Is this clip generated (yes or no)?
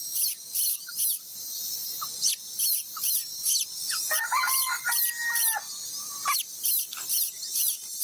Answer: no